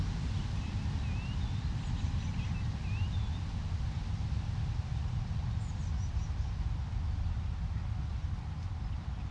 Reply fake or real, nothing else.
real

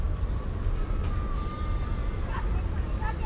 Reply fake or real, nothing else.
real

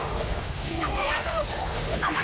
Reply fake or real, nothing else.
fake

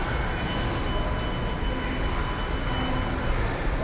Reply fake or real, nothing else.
real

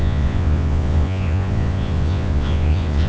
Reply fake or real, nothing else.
fake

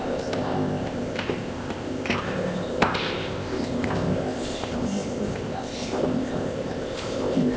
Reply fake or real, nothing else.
fake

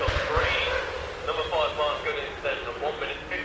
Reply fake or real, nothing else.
real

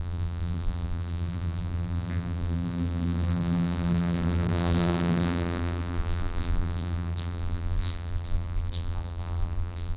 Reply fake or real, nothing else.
fake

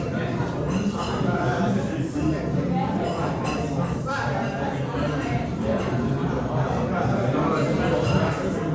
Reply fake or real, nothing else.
fake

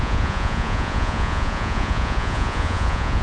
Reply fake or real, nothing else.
fake